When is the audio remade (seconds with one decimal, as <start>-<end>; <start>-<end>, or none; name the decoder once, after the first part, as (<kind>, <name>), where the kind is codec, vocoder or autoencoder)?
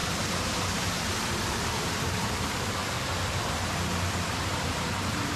0.8-2.8 (vocoder, BigVGAN v2); 4.1-5.4